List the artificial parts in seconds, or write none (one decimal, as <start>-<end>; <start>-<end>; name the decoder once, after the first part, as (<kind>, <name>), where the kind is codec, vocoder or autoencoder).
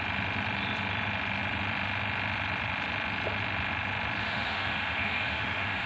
4.2-5.9 (autoencoder, DAC-VAE)